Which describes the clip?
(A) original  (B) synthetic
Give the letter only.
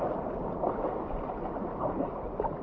A